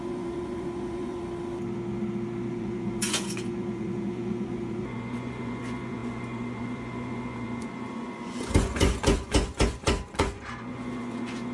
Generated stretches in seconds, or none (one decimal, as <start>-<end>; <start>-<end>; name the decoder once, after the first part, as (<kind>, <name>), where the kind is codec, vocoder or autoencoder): 0.0-1.2 (vocoder, Vocos); 2.5-11.5